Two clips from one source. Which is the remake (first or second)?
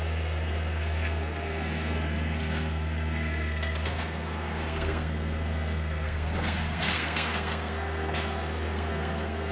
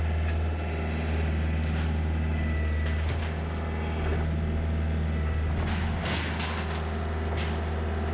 first